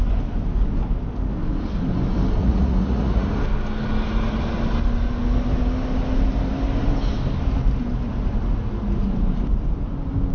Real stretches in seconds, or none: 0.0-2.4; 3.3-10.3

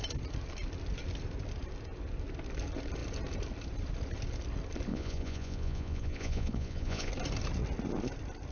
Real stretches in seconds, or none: 0.0-4.9; 7.1-8.5

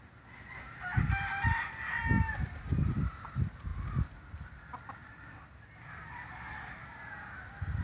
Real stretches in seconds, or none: 0.0-7.8

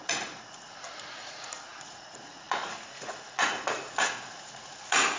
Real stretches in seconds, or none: none

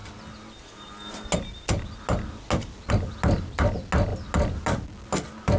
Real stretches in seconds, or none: 0.0-5.6